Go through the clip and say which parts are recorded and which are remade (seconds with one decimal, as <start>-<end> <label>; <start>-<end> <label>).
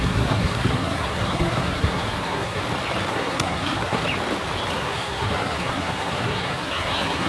0.0-2.6 remade; 2.6-3.1 recorded; 3.1-4.0 remade; 4.0-4.7 recorded; 4.7-7.3 remade